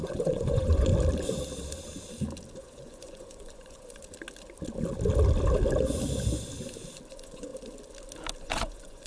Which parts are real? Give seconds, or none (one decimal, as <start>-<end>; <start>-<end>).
0.9-2.6; 4.0-7.1; 7.5-8.4